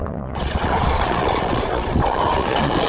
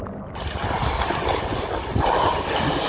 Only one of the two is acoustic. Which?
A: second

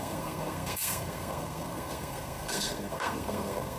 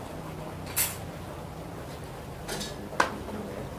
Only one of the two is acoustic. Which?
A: second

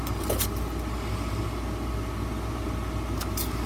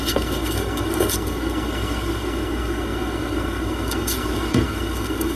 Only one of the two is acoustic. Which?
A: first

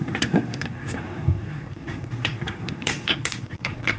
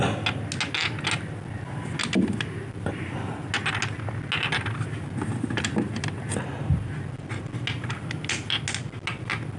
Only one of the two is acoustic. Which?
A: second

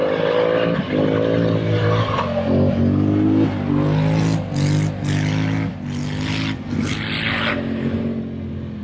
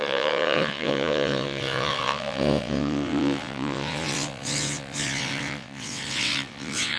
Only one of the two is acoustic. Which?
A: first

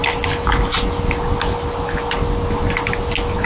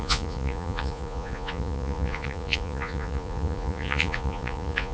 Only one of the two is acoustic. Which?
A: first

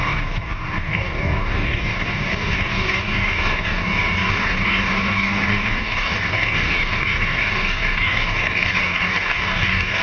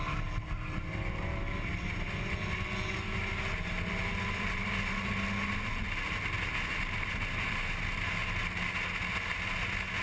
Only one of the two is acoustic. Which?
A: second